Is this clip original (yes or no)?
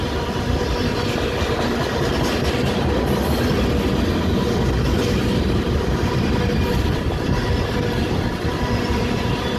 yes